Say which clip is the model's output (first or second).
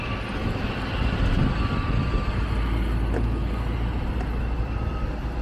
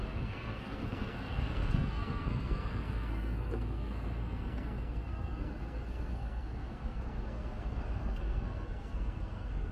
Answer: second